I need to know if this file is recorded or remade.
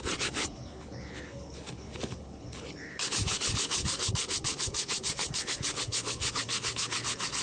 remade